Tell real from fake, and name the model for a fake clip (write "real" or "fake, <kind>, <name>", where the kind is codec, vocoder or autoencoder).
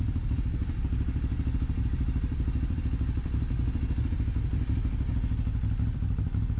fake, vocoder, BigVGAN v2